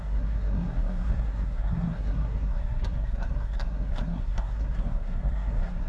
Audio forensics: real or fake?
fake